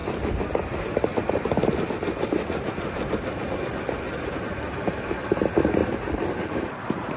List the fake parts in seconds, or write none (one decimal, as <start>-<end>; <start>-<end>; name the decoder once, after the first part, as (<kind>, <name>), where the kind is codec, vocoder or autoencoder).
none